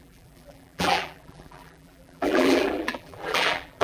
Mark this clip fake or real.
fake